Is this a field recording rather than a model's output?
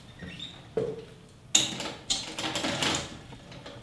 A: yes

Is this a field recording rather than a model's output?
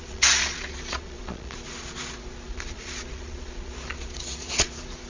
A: no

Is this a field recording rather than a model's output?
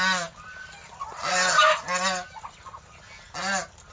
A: yes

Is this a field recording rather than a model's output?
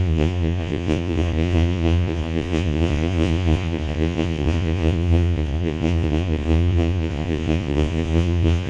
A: no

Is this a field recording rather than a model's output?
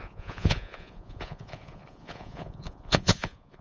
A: no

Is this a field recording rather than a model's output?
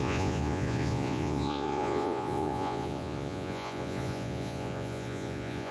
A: no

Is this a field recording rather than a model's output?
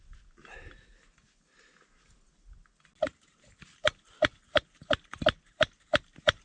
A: yes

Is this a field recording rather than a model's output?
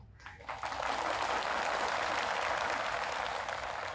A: yes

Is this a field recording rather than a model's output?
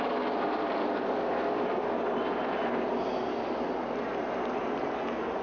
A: yes